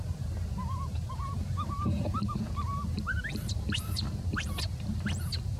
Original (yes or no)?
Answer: no